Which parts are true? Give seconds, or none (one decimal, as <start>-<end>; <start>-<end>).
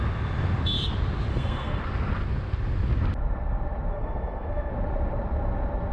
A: 0.0-1.3; 1.8-3.9; 4.7-5.9